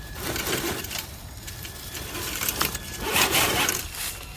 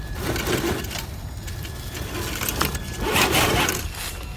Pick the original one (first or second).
second